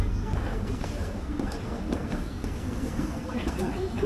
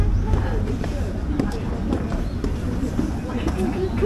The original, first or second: second